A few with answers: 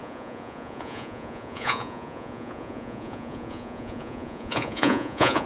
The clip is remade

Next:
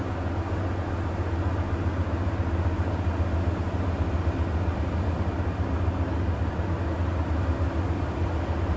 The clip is recorded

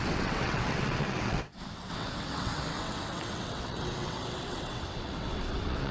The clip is remade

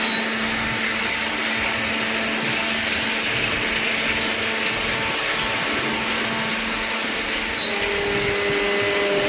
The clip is recorded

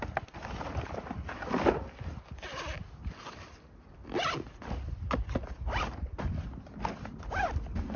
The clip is recorded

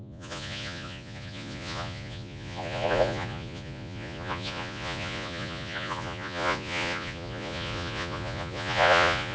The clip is remade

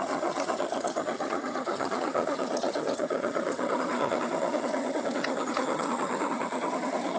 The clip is remade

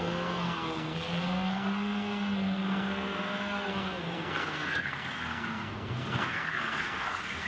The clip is remade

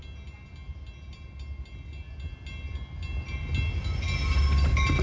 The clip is recorded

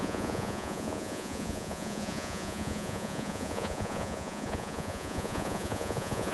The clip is remade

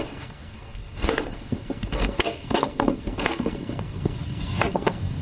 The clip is remade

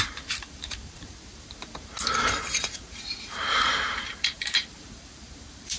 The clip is remade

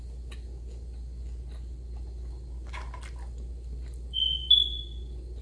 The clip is recorded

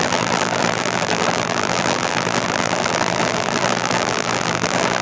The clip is remade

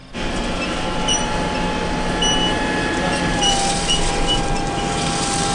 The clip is recorded